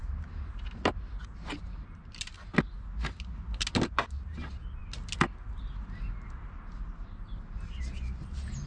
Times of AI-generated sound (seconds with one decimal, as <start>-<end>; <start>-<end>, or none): none